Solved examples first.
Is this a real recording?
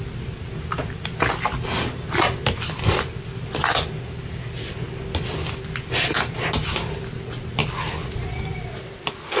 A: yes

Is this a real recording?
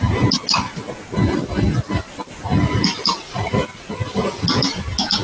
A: yes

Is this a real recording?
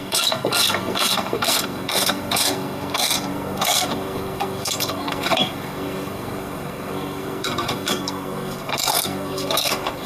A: no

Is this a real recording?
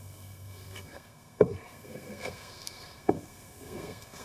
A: no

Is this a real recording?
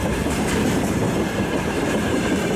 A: no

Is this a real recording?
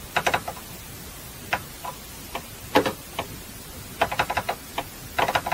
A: yes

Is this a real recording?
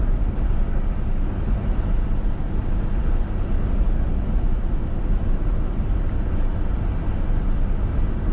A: yes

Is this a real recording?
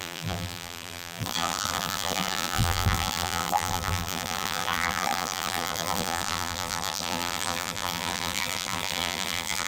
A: no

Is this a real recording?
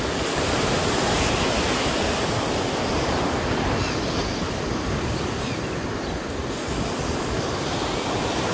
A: yes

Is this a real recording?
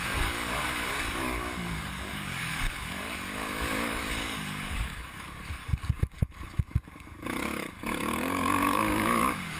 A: no